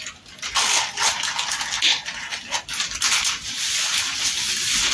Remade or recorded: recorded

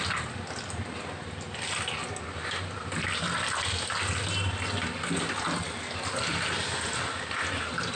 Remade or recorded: recorded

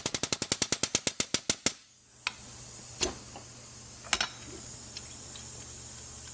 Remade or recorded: recorded